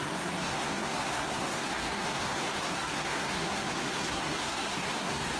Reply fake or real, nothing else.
fake